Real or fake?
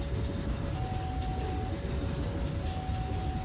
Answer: real